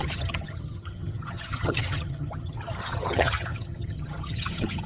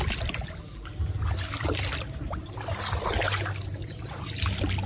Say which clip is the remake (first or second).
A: first